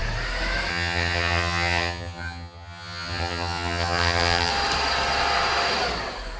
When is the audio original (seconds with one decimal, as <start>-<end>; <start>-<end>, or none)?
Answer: 0.0-0.7; 4.5-6.4